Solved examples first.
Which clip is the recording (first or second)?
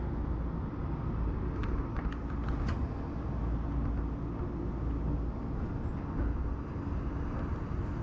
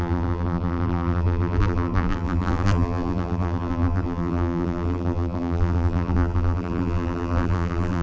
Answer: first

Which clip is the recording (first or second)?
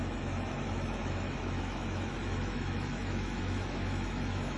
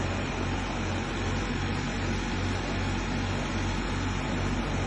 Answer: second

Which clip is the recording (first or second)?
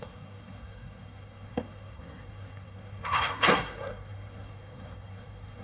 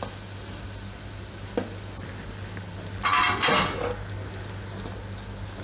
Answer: second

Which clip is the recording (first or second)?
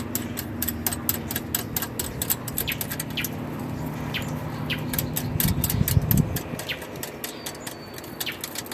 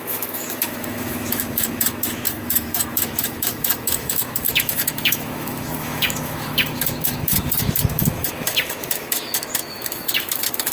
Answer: first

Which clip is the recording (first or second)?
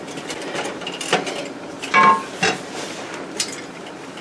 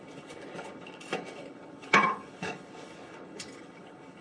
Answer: first